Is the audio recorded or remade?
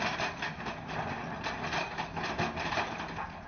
recorded